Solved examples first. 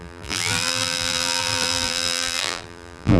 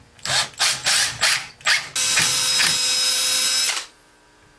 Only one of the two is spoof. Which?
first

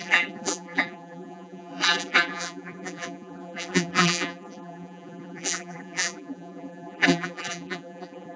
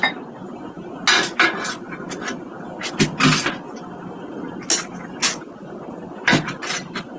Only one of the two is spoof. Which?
first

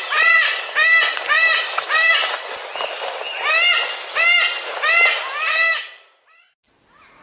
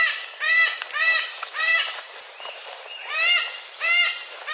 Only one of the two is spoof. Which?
second